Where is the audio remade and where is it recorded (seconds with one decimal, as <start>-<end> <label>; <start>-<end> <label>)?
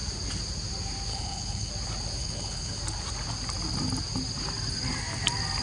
0.0-1.1 recorded; 1.1-1.7 remade; 1.7-2.2 recorded; 2.2-2.8 remade; 2.8-5.6 recorded